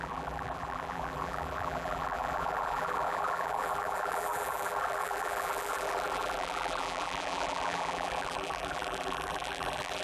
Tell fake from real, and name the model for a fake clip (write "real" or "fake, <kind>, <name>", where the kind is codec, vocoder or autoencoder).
fake, vocoder, BigVGAN v2